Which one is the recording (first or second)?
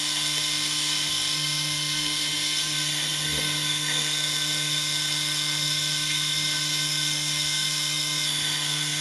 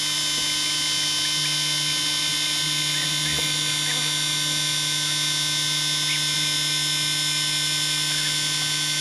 second